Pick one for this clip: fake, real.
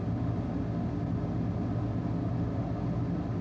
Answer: real